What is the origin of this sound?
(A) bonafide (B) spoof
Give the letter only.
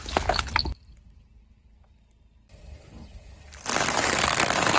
A